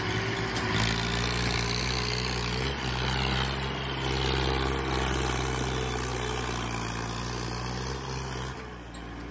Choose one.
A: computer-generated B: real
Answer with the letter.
B